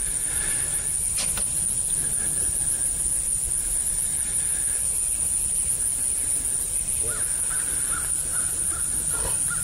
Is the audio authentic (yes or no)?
yes